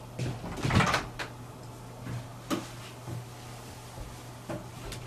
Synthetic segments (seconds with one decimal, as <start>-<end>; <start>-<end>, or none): none